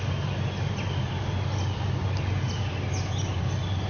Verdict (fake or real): real